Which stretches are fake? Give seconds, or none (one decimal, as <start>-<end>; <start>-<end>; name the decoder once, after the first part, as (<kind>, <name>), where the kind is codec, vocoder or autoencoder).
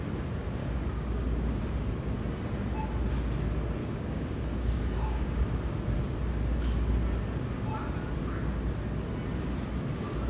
0.6-1.6 (codec, DAC); 3.8-5.4